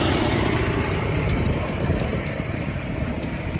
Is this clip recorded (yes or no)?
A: no